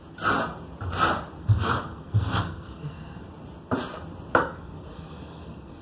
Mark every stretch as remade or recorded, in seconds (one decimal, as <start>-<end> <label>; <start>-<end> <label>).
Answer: 0.0-1.4 recorded; 1.4-3.3 remade; 3.3-4.4 recorded; 4.4-5.8 remade